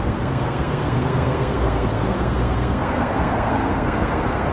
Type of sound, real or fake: fake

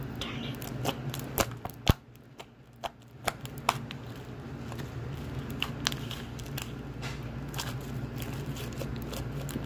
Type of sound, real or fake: real